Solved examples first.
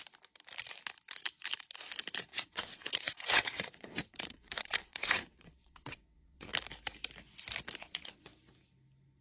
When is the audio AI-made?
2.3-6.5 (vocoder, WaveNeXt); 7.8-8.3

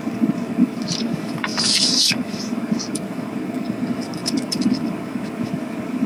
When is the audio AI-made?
0.0-6.1 (codec, DAC)

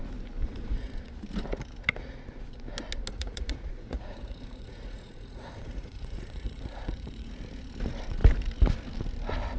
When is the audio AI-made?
0.4-1.1 (vocoder, Vocos); 3.1-7.3

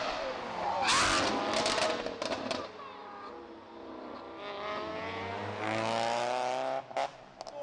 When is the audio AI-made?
none

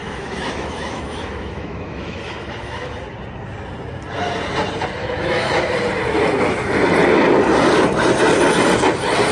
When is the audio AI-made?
0.0-3.0 (autoencoder, DAC-VAE); 5.0-5.7